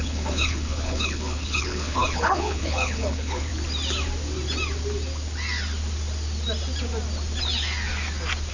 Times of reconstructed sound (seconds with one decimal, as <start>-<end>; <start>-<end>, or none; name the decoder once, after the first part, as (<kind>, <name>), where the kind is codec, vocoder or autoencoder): 0.0-3.5 (codec, HILCodec)